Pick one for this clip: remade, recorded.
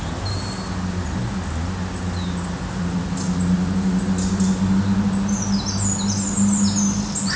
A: recorded